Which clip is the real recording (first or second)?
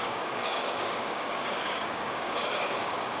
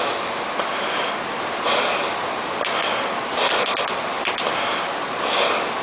second